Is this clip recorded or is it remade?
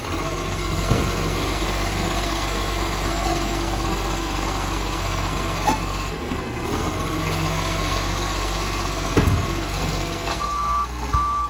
remade